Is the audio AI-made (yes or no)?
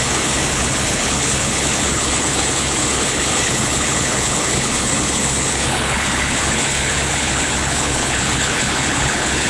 yes